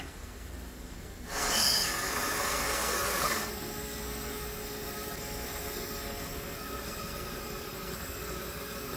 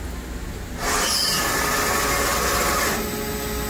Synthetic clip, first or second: first